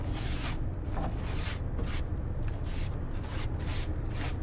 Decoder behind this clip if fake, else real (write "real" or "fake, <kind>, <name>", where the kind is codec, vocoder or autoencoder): real